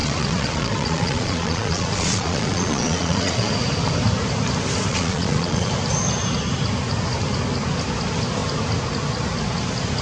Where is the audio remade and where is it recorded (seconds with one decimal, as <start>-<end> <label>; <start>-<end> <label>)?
0.0-3.5 remade; 3.5-4.9 recorded; 4.9-5.7 remade; 5.7-10.0 recorded